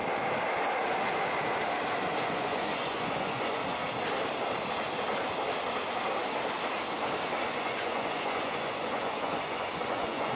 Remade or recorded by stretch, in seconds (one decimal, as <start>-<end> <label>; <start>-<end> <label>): 0.0-2.2 recorded; 2.2-3.6 remade; 3.6-7.5 recorded; 7.5-10.4 remade